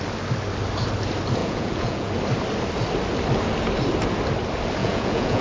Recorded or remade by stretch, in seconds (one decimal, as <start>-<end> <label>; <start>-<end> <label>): 0.0-1.4 recorded; 1.4-2.1 remade; 2.1-4.8 recorded; 4.8-5.4 remade